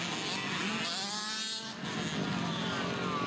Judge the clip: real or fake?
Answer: real